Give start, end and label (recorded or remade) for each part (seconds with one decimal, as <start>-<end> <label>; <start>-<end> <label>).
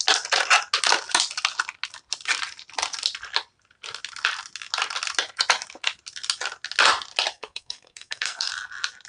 0.0-7.3 recorded; 7.3-8.5 remade; 8.5-9.1 recorded